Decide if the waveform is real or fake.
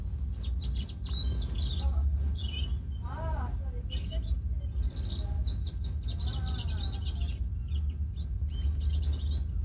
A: real